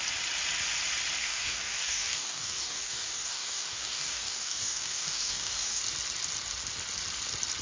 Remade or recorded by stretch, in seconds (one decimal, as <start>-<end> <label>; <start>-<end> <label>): 0.0-1.2 recorded; 1.2-5.8 remade; 5.8-7.6 recorded